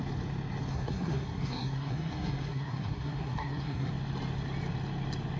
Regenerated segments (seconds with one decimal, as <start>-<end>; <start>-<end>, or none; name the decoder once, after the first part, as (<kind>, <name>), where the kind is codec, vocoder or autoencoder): 0.7-3.9 (codec, SNAC)